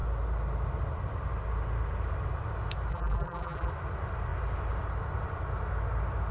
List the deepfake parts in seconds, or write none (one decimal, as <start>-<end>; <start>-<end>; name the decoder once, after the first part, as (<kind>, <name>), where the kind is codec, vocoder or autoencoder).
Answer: 2.9-3.7 (vocoder, BigVGAN v2)